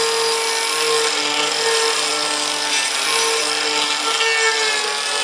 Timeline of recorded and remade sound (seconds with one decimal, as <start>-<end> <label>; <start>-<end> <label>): 0.0-5.2 recorded

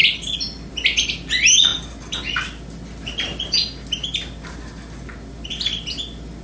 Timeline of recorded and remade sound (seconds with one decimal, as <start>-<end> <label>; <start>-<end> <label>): 0.0-6.4 recorded